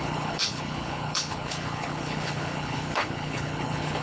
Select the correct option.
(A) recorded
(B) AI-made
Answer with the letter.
B